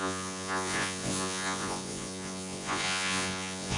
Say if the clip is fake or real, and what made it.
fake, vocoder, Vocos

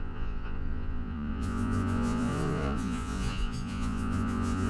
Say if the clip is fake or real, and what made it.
fake, vocoder, Vocos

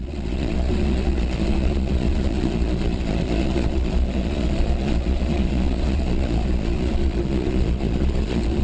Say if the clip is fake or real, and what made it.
fake, vocoder, Vocos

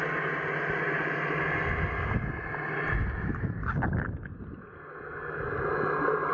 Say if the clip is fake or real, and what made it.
real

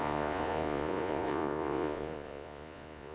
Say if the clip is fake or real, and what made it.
fake, vocoder, Vocos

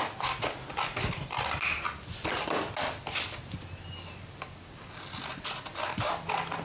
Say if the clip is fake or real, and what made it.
real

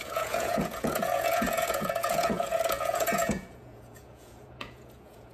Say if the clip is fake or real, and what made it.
fake, vocoder, Vocos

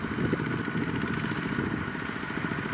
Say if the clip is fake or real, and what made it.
real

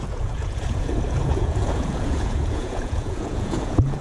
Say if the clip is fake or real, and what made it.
fake, vocoder, Vocos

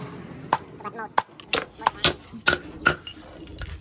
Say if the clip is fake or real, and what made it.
real